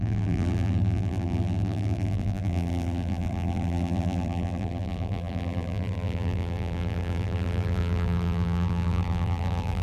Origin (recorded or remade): remade